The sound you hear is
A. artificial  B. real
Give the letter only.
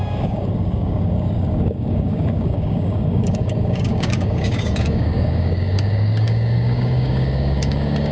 A